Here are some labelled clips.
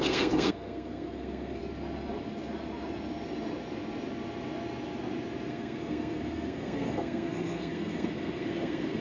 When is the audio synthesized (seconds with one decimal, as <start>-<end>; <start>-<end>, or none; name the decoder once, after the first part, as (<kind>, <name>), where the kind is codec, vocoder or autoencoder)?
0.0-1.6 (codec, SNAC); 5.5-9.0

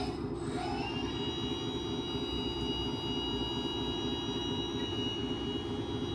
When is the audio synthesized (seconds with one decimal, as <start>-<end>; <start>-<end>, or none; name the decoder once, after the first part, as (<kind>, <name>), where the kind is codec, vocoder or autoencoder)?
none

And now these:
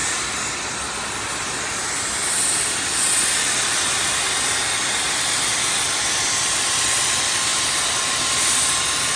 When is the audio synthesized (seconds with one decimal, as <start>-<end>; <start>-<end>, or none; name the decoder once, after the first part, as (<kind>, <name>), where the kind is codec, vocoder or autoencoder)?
none